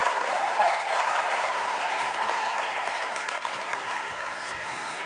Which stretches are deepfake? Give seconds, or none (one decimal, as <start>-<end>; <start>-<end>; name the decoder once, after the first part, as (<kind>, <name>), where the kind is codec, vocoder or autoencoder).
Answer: 0.0-5.1 (codec, SNAC)